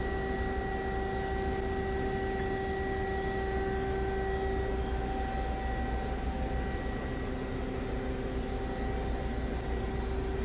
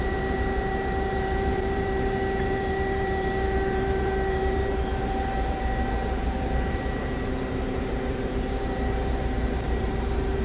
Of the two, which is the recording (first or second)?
first